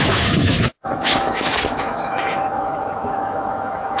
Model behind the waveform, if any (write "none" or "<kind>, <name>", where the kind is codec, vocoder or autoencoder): autoencoder, DAC-VAE